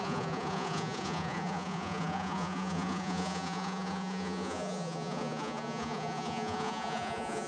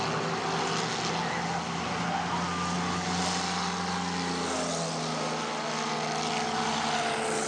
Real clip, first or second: second